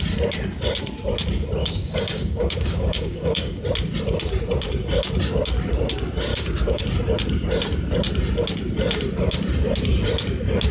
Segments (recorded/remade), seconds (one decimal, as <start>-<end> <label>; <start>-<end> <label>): 0.0-1.6 recorded; 1.6-3.6 remade; 3.6-6.3 recorded; 6.3-6.8 remade; 6.8-10.7 recorded